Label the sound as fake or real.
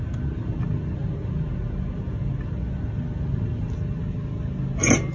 real